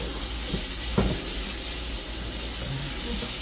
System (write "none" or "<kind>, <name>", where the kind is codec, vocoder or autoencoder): none